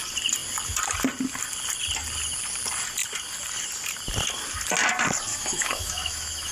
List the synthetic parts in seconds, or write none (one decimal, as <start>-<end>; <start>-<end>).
5.3-6.5